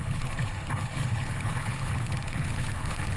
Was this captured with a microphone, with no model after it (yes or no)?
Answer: no